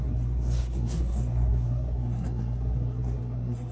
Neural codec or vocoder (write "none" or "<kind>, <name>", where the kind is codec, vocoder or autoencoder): codec, SNAC